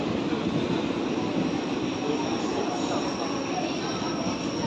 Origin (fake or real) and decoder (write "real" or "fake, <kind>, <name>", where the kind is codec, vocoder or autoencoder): real